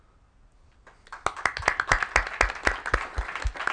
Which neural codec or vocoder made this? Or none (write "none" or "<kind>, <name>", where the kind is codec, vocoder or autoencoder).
none